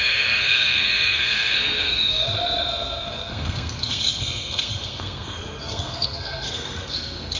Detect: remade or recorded remade